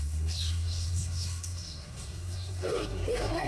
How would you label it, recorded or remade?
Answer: remade